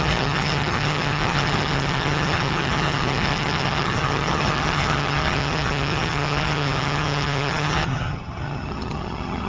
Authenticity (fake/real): fake